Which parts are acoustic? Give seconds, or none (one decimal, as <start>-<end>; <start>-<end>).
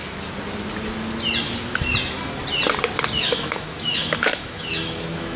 0.0-3.2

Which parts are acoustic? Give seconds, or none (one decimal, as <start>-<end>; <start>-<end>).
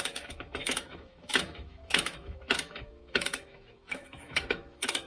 none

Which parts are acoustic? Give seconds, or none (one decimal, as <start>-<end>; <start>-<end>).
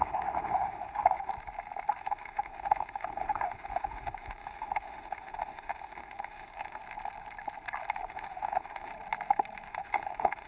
1.3-2.0; 6.8-8.1; 8.9-9.7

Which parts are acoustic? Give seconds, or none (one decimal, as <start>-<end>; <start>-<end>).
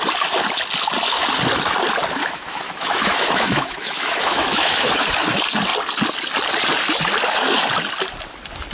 0.0-2.2; 5.1-8.7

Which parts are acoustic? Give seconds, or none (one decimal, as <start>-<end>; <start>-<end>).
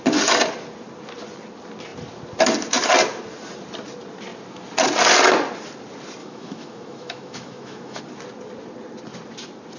0.0-6.2; 8.0-9.8